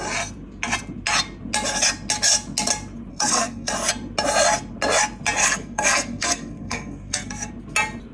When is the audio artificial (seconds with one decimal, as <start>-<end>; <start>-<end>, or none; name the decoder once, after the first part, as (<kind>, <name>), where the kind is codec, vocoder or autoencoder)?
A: 3.1-3.7 (codec, SNAC); 5.4-7.5